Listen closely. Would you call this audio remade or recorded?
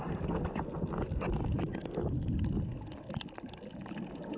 recorded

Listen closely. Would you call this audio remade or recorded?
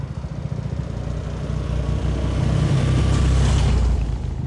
recorded